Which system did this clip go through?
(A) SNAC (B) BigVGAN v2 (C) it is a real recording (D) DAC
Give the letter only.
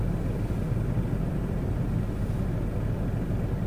C